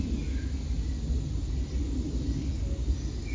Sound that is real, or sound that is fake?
real